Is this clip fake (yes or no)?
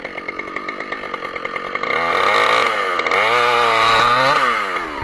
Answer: no